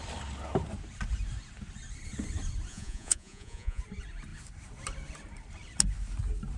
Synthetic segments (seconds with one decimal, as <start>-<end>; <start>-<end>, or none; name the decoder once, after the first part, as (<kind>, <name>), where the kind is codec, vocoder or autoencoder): 2.7-3.8 (vocoder, Vocos)